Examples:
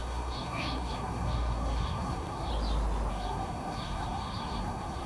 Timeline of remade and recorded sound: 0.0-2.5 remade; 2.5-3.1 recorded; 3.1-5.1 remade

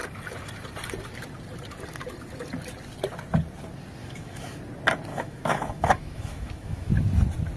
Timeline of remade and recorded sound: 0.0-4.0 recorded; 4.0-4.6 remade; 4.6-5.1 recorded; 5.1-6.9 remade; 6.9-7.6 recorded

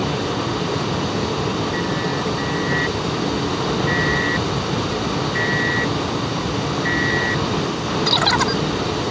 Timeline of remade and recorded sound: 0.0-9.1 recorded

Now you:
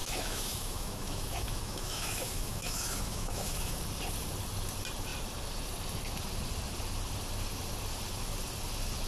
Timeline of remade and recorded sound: 0.0-3.8 remade; 3.8-9.1 recorded